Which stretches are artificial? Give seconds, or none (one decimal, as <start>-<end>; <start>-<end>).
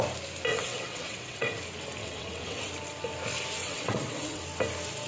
0.5-1.6; 2.0-2.7; 3.6-4.4